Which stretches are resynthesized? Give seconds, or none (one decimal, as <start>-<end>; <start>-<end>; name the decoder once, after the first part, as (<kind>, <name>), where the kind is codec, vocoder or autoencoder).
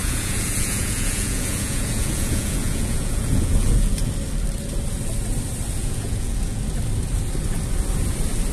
0.0-4.1 (vocoder, Vocos); 5.8-6.6